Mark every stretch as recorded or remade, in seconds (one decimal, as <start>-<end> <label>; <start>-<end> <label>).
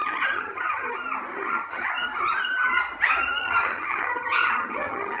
0.0-0.9 remade; 0.9-1.3 recorded; 1.3-1.9 remade; 1.9-3.4 recorded; 3.4-5.2 remade